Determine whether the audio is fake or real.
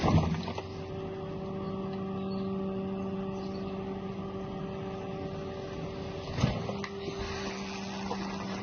real